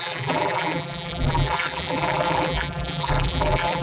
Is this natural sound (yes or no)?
no